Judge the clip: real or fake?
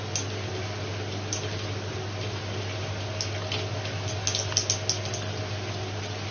real